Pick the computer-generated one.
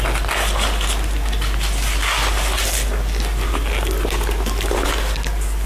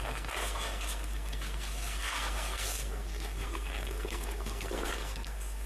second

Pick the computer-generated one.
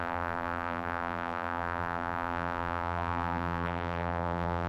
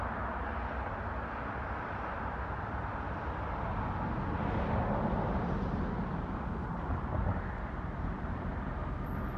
first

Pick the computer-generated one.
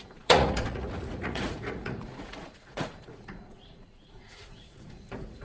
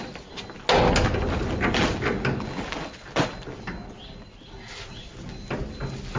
first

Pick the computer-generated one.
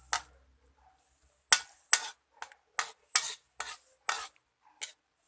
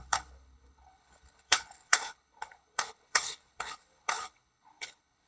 second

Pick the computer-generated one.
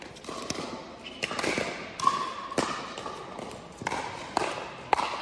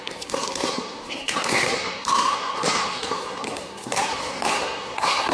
second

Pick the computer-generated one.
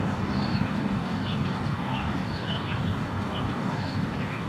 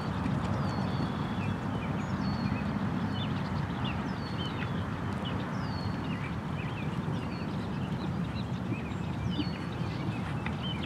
first